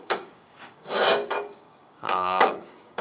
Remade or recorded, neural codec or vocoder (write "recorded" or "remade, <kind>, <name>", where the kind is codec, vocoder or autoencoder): remade, codec, DAC